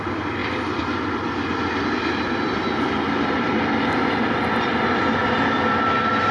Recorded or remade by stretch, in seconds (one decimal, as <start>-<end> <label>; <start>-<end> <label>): 0.0-6.3 recorded